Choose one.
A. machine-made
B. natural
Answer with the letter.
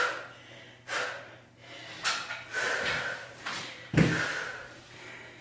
B